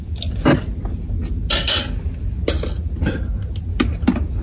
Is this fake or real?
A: real